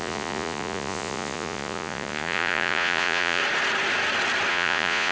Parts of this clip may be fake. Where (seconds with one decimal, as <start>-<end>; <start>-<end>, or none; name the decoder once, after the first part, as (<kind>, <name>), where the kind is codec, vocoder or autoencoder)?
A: 0.0-3.4 (vocoder, Vocos); 4.5-5.1